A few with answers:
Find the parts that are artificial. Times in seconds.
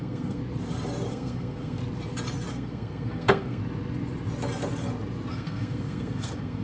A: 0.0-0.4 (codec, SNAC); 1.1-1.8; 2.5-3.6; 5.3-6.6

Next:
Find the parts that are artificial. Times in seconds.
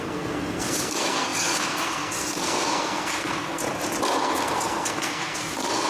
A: 0.0-3.6 (codec, SNAC); 4.2-5.9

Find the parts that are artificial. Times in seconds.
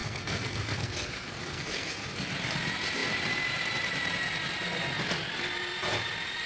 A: 0.0-2.3 (codec, SNAC)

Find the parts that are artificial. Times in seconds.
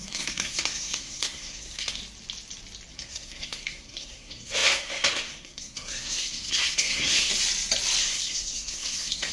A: 0.0-2.0 (codec, SNAC); 2.9-7.3; 8.0-9.3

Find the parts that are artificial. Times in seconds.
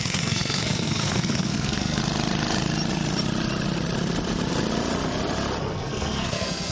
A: 0.0-2.0 (codec, SNAC); 5.6-6.7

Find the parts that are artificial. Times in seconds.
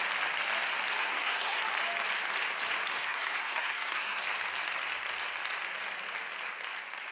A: 1.0-1.6 (codec, SNAC); 2.9-4.2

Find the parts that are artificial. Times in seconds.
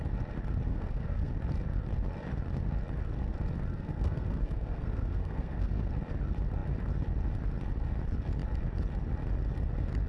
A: 0.7-1.3 (codec, SNAC); 3.7-5.9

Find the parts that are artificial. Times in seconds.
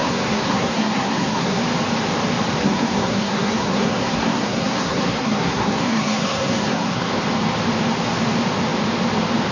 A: 0.0-1.6 (codec, SNAC); 2.6-7.1